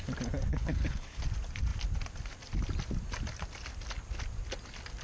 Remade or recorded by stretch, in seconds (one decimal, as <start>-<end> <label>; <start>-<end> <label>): 0.0-0.5 recorded; 0.5-1.2 remade; 1.2-5.0 recorded